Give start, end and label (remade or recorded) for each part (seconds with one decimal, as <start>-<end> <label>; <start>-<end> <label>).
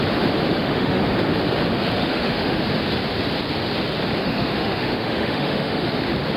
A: 0.0-0.5 recorded; 0.5-1.0 remade; 1.0-2.0 recorded; 2.0-2.6 remade; 2.6-4.2 recorded; 4.2-5.9 remade; 5.9-6.4 recorded